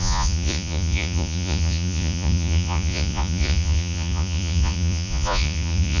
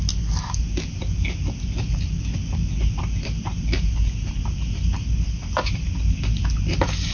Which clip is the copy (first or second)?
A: first